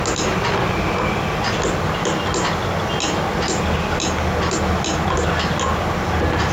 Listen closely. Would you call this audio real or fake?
real